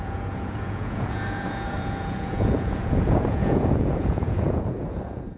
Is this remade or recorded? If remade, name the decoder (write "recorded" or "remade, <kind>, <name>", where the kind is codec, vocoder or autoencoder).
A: remade, vocoder, Vocos